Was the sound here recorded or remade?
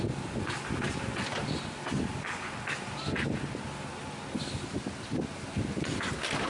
recorded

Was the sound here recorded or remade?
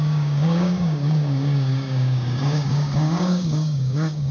remade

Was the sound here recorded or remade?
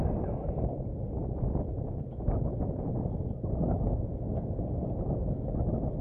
recorded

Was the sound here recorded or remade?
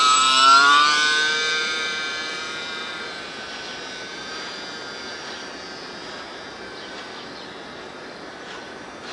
remade